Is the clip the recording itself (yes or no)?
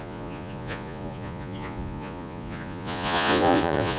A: no